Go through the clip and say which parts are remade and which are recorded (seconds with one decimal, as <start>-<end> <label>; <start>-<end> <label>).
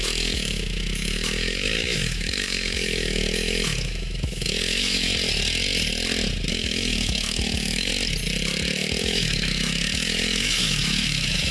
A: 0.0-5.1 remade; 5.1-6.5 recorded; 6.5-7.9 remade; 7.9-9.0 recorded; 9.0-11.5 remade